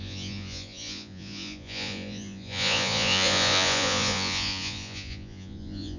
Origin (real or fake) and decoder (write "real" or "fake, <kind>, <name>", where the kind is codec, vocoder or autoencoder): fake, vocoder, Vocos